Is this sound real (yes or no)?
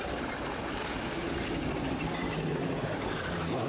yes